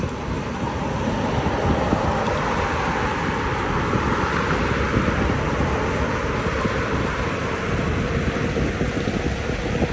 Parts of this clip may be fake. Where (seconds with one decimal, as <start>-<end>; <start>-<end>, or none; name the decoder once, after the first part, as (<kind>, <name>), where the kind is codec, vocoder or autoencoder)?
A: none